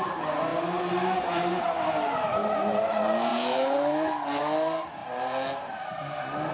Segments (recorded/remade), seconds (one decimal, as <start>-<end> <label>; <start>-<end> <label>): 0.0-2.4 recorded; 2.4-2.9 remade; 2.9-6.5 recorded